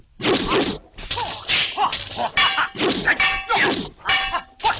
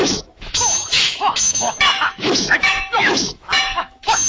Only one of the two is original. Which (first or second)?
first